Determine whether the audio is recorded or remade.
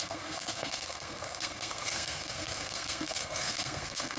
remade